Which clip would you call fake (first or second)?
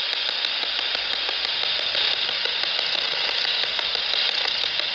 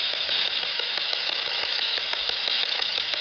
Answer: second